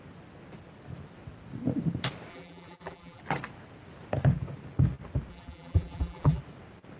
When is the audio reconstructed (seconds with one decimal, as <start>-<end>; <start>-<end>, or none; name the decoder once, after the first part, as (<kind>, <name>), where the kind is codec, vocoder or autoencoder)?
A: 2.3-3.2 (vocoder, BigVGAN v2); 5.3-6.4

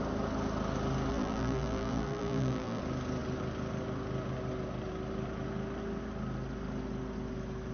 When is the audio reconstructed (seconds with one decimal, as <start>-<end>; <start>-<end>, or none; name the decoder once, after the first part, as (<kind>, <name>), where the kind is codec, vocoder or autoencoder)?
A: 1.1-2.8 (vocoder, BigVGAN v2)

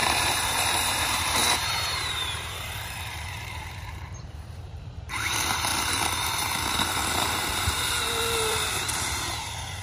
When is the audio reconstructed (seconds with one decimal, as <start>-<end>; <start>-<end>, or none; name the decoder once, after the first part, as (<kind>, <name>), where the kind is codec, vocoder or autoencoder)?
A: 0.0-5.7 (vocoder, BigVGAN v2); 7.1-9.8

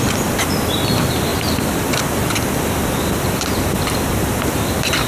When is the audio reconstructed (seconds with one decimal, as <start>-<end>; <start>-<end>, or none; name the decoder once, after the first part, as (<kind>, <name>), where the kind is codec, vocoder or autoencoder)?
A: 0.0-5.1 (vocoder, BigVGAN v2)

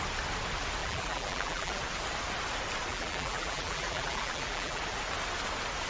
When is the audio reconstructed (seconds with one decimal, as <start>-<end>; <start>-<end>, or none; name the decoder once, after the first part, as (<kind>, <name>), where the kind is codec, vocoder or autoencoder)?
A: 0.8-1.8 (vocoder, BigVGAN v2); 2.9-4.8